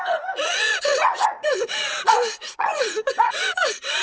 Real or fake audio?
fake